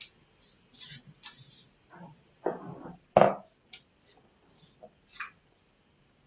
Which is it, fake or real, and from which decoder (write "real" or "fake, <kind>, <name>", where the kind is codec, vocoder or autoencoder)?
real